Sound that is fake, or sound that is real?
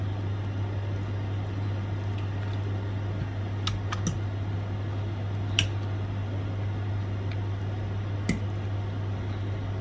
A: real